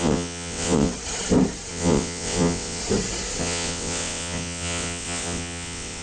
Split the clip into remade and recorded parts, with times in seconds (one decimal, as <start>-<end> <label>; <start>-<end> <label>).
0.0-0.9 remade; 0.9-1.7 recorded; 1.7-2.8 remade; 2.8-3.4 recorded; 3.4-6.0 remade